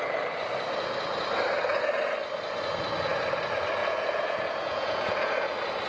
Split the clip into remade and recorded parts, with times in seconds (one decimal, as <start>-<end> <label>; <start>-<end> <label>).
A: 0.0-3.8 recorded; 3.8-5.5 remade; 5.5-5.9 recorded